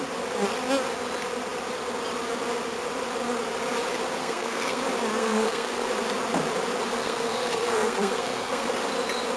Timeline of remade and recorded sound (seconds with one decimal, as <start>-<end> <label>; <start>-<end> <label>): 0.0-4.2 recorded; 4.2-4.8 remade; 4.8-5.2 recorded; 5.2-5.9 remade; 5.9-6.9 recorded; 6.9-8.7 remade; 8.7-9.4 recorded